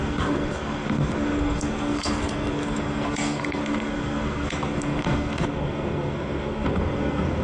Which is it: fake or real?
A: fake